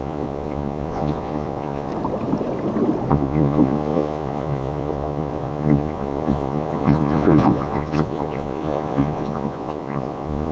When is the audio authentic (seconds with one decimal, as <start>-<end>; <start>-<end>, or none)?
1.9-3.1